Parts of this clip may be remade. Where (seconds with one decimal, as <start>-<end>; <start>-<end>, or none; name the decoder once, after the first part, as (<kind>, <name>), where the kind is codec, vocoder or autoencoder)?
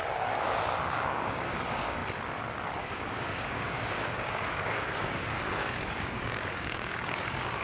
0.0-2.0 (codec, DAC); 2.8-7.6